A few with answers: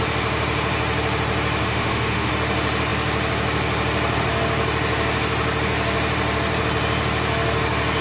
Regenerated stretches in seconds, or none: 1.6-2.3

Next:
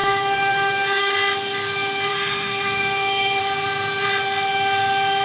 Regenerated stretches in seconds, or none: 0.0-1.0; 2.1-3.4

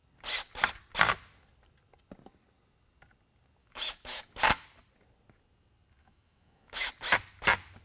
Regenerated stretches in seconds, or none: 3.6-4.2; 6.0-6.9

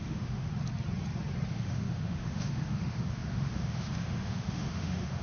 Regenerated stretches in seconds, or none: 0.0-0.5; 1.5-5.2

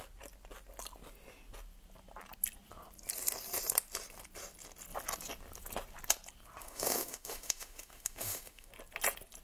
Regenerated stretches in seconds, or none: 6.6-8.7

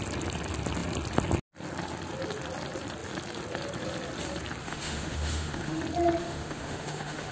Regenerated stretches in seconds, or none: 4.6-5.8; 6.2-7.3